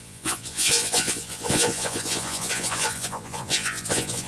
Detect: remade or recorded remade